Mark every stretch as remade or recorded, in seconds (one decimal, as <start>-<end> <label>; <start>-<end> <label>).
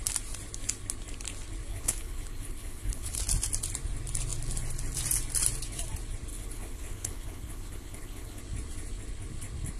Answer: 0.0-1.7 recorded; 1.7-3.2 remade; 3.2-6.3 recorded; 6.3-8.4 remade; 8.4-9.8 recorded